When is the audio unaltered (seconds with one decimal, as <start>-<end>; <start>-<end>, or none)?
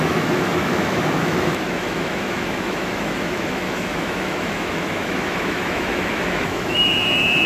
none